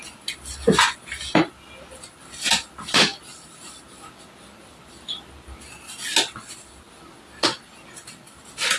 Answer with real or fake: real